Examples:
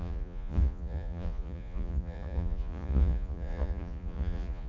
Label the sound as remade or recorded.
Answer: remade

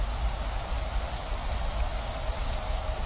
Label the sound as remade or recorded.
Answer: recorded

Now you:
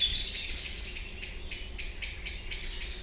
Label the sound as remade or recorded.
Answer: recorded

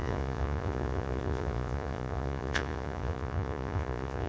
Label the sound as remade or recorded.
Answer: remade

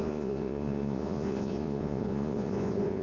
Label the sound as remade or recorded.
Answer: remade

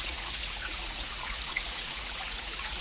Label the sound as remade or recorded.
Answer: remade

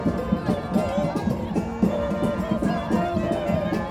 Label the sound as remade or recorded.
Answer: recorded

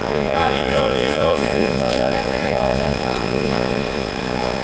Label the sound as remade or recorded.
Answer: remade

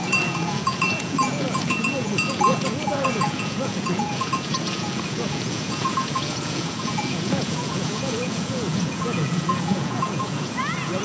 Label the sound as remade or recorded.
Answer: remade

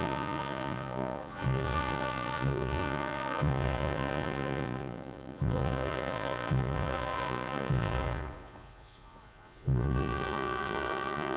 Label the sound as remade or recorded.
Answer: remade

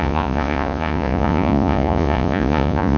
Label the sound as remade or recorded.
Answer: remade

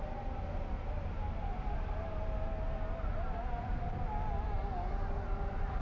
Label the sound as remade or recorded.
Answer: recorded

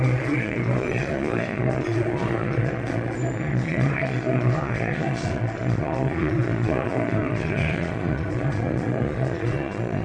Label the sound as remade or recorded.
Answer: remade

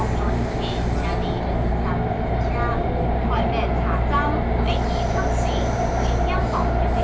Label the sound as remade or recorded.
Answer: recorded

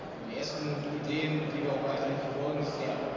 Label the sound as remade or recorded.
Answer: recorded